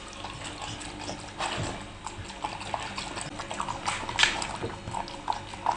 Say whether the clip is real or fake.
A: real